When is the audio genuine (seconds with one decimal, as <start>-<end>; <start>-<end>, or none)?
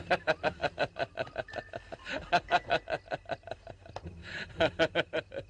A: 0.0-4.2; 4.9-5.5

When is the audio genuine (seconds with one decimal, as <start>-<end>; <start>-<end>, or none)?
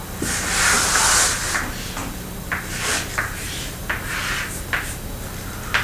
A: 0.0-2.0; 3.5-5.8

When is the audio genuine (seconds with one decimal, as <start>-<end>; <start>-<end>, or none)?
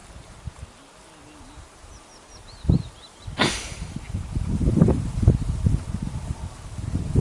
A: 1.2-2.4; 3.2-7.2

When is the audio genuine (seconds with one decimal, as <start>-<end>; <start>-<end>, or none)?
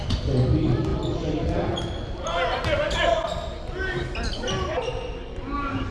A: 0.0-5.9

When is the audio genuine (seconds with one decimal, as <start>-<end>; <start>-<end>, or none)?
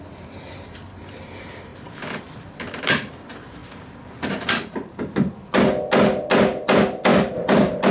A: 0.0-1.7; 2.8-3.6; 5.6-7.1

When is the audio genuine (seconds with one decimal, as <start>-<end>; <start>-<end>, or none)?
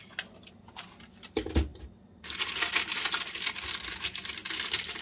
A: 0.0-5.0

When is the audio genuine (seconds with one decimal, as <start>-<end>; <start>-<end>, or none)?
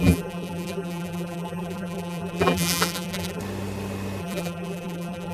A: 3.4-4.2